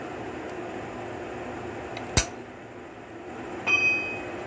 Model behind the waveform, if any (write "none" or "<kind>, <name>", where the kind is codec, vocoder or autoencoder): none